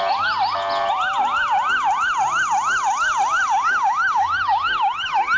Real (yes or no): yes